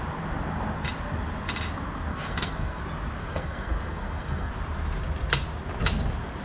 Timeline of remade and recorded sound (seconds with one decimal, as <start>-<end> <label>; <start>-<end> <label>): 0.0-2.1 recorded; 2.1-2.8 remade; 2.8-3.2 recorded; 3.2-4.5 remade; 4.5-6.4 recorded